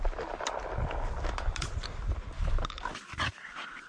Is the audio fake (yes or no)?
no